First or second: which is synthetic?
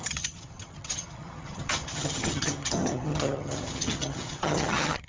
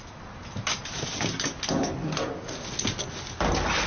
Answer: first